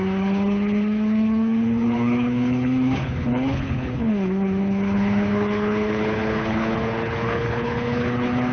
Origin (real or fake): fake